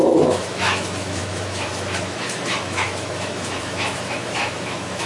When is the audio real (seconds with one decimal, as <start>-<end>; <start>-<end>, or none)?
none